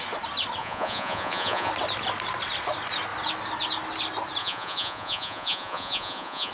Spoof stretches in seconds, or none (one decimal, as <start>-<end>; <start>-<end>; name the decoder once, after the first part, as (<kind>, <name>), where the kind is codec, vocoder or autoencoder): 0.6-1.7 (vocoder, Vocos); 4.4-6.5